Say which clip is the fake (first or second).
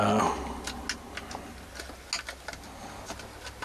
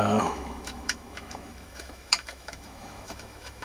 second